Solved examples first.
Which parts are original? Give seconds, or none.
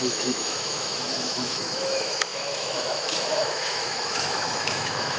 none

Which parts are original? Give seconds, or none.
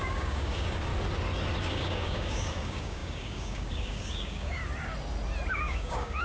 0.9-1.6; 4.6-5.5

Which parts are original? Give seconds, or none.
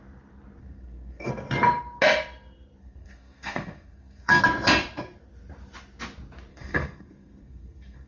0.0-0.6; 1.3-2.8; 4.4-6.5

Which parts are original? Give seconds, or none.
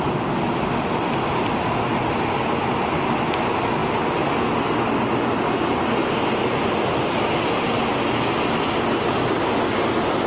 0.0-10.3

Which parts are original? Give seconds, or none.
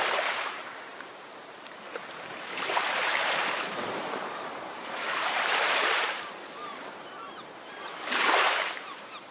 none